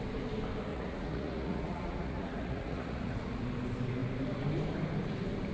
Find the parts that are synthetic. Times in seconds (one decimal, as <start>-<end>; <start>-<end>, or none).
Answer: 0.7-3.4